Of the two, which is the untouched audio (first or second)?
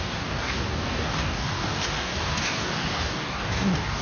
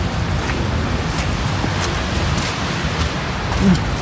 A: second